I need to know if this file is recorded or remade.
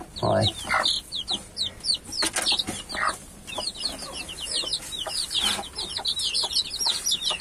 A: recorded